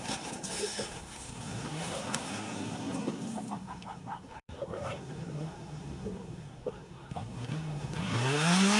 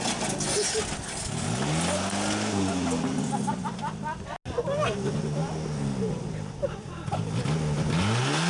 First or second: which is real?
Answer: second